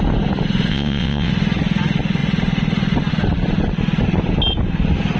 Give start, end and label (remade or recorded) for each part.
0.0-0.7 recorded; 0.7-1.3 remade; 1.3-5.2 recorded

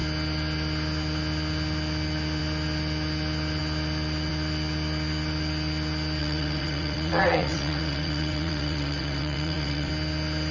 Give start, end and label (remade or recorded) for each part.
0.0-6.2 recorded; 6.2-9.9 remade; 9.9-10.5 recorded

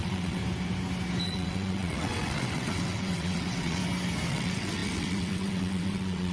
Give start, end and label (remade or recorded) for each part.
0.0-0.4 remade; 0.4-1.2 recorded; 1.2-3.8 remade; 3.8-4.3 recorded; 4.3-6.3 remade

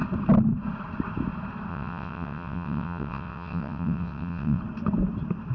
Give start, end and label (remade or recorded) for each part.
0.0-1.7 recorded; 1.7-4.6 remade; 4.6-5.5 recorded

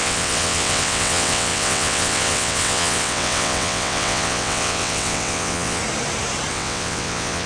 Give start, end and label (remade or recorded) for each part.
0.0-5.8 remade; 5.8-6.5 recorded; 6.5-7.5 remade

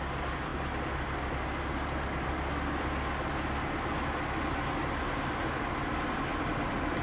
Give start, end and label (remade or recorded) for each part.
0.0-7.0 recorded